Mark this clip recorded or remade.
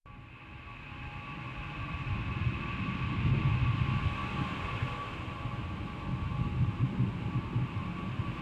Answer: recorded